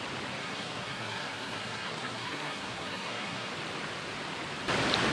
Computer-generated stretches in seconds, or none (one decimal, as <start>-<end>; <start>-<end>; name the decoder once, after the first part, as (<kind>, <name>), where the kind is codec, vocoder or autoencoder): 0.4-3.5 (codec, SNAC)